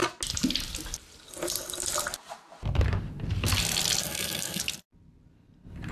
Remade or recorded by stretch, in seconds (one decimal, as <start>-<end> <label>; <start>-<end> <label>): 0.0-4.0 recorded; 4.0-4.6 remade; 4.6-5.9 recorded